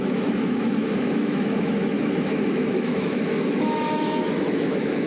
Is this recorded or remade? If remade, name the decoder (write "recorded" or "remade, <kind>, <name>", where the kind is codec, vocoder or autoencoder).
remade, autoencoder, DAC-VAE